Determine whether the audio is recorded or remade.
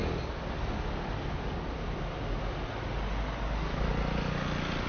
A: recorded